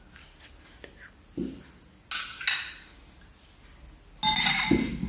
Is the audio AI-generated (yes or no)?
no